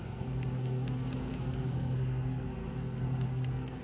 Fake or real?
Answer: fake